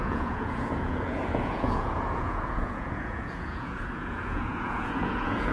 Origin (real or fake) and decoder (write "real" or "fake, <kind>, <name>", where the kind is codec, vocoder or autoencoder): fake, vocoder, Vocos